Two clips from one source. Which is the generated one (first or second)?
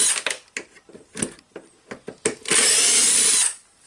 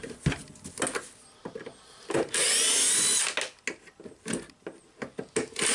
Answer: first